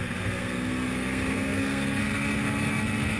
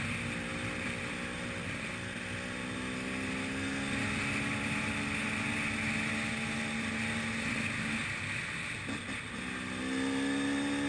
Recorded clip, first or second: second